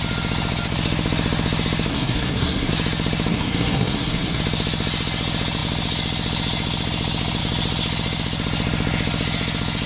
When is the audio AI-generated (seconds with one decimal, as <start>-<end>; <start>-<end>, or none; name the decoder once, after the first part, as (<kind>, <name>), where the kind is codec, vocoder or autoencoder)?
1.9-2.7 (codec, SNAC); 3.3-4.4